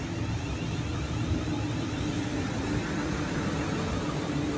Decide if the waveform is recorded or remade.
recorded